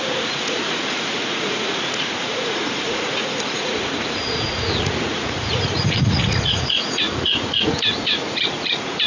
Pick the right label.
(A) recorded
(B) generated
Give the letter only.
B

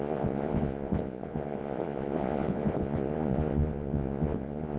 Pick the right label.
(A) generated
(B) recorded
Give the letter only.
A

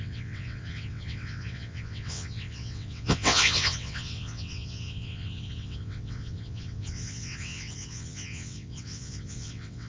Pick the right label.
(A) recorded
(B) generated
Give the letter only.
B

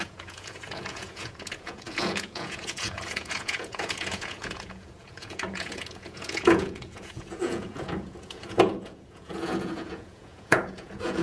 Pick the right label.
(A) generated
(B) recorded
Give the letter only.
A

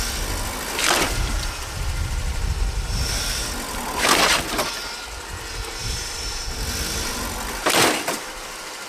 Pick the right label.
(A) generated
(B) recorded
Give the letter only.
B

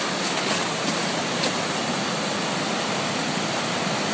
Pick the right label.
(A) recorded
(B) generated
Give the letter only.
A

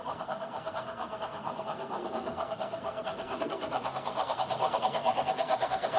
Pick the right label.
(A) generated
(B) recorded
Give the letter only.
A